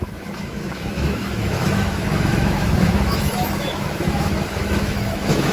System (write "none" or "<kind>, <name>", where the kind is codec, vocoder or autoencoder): autoencoder, DAC-VAE